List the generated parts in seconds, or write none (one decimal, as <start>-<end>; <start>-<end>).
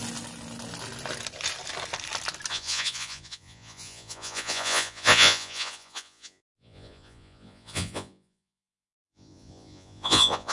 2.5-10.5